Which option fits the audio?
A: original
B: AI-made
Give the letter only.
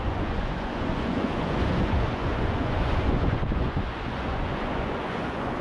B